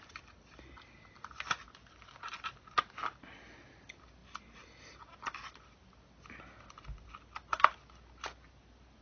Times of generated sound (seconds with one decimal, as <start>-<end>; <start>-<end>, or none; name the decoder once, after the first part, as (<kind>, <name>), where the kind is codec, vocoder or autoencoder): none